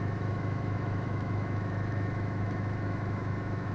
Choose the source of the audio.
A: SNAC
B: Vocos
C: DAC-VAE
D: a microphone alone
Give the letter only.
C